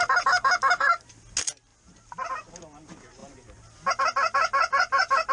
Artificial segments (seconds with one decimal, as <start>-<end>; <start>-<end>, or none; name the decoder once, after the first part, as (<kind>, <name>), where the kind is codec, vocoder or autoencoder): none